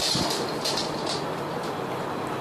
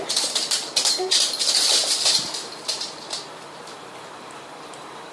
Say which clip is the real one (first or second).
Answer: first